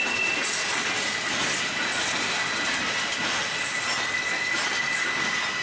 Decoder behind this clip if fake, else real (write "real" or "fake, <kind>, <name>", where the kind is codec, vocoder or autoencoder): real